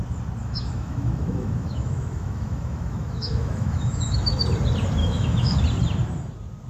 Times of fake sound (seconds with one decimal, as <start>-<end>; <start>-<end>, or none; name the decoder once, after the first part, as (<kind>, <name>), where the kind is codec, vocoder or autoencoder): 0.4-4.4 (autoencoder, DAC-VAE); 5.0-5.6